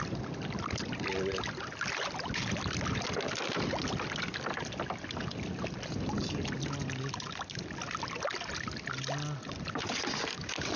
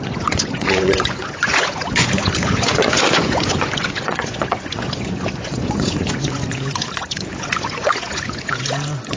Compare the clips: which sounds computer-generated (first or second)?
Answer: second